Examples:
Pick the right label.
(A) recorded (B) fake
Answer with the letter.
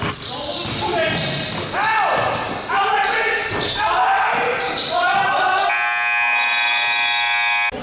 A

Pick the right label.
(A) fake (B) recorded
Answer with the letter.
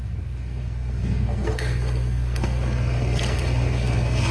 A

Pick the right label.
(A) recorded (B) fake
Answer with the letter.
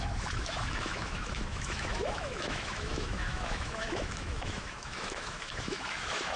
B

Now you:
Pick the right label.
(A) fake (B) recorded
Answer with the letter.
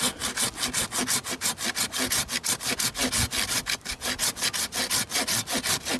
B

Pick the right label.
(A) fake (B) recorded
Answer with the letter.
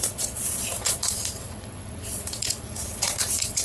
A